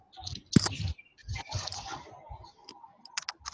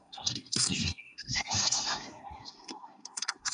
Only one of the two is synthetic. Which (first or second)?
second